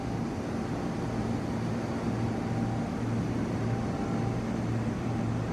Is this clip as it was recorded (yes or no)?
yes